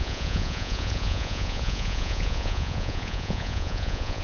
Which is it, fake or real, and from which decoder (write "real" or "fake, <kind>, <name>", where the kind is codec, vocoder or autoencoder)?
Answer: fake, vocoder, Vocos